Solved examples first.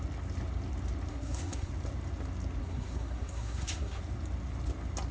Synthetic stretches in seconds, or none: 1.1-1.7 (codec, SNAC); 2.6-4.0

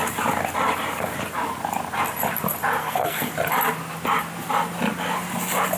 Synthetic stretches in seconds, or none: 2.8-3.3 (codec, SNAC)

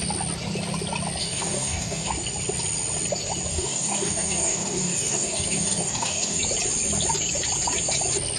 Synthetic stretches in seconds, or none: 1.2-2.1 (codec, DAC); 3.5-6.4

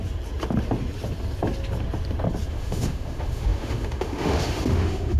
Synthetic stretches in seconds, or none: 2.5-5.2 (autoencoder, DAC-VAE)

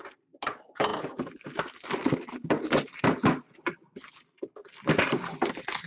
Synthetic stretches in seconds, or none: none

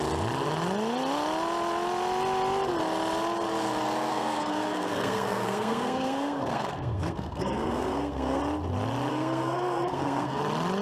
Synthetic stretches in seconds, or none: 4.1-8.4 (codec, SNAC); 9.1-10.4

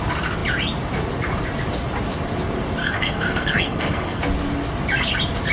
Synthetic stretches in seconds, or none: 2.8-4.2 (codec, SNAC)

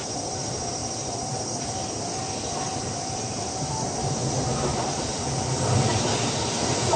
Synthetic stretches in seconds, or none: none